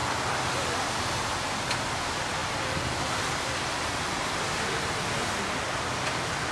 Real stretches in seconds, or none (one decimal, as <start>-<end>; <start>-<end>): 0.0-6.5